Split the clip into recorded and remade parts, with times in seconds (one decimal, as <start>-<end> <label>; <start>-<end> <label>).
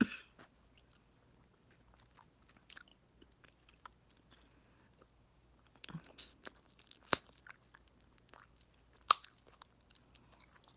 0.0-10.8 recorded